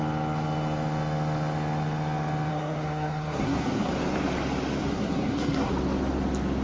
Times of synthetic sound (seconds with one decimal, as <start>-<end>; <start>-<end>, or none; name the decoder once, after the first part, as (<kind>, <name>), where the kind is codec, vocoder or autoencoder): 2.5-3.9 (codec, SNAC); 4.8-5.7